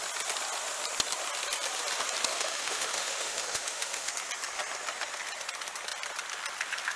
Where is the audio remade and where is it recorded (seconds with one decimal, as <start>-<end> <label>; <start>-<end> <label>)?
0.0-2.3 recorded; 2.3-4.1 remade; 4.1-7.0 recorded